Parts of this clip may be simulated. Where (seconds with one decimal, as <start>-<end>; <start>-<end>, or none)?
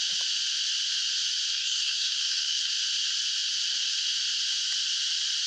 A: 1.5-2.7